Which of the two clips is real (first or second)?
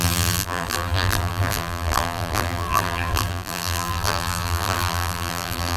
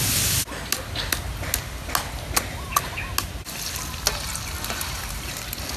second